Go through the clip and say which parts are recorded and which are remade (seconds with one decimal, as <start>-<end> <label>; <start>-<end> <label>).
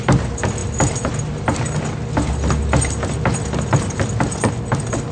0.0-5.1 recorded